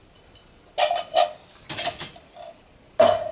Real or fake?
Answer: real